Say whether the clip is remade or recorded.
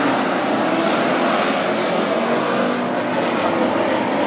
recorded